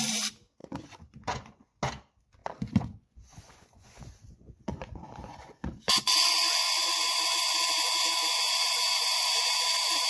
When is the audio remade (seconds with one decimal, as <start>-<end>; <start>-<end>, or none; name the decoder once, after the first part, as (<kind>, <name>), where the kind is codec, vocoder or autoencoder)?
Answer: 0.6-1.8 (vocoder, Vocos); 2.4-7.7

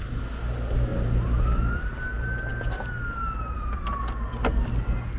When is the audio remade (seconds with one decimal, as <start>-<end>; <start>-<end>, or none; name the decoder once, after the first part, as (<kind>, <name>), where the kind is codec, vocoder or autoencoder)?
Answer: none

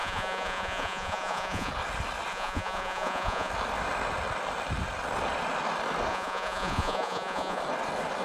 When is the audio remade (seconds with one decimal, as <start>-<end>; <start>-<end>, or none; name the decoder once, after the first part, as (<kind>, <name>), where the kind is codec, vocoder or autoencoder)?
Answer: 0.0-1.7 (vocoder, Vocos); 2.3-3.5; 6.1-7.6

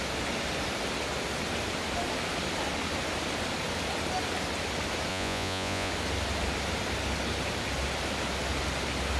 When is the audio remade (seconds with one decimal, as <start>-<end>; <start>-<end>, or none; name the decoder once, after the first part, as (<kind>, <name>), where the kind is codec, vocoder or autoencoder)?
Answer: 5.1-5.9 (vocoder, Vocos)

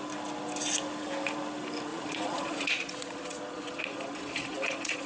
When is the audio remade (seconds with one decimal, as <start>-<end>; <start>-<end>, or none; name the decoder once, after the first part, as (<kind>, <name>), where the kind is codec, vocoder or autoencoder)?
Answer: 1.9-5.1 (vocoder, Vocos)

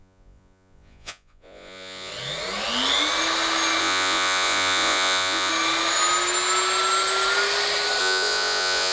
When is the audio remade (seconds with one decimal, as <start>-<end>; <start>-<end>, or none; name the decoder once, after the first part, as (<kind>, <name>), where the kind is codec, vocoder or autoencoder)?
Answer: 0.0-2.1 (vocoder, Vocos); 3.8-5.5; 8.0-8.9

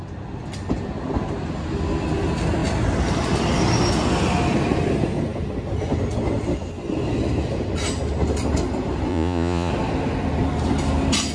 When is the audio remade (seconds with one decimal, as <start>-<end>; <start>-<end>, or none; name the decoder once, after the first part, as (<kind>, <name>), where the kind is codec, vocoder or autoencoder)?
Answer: 9.1-9.7 (vocoder, Vocos)

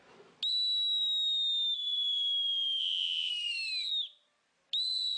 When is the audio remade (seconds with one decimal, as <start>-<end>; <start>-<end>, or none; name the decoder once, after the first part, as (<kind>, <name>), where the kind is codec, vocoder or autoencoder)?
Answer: 2.8-3.3 (vocoder, Vocos)